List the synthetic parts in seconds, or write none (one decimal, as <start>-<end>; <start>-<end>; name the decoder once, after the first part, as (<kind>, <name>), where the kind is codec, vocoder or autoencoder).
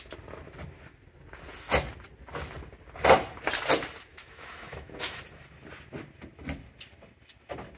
4.1-5.2 (autoencoder, DAC-VAE)